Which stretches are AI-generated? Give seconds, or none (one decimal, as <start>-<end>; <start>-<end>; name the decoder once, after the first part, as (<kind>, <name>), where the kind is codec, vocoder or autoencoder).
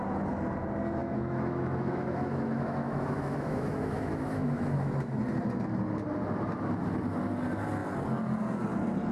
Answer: 1.0-5.2 (autoencoder, DAC-VAE)